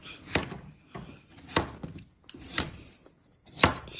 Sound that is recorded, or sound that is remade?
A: recorded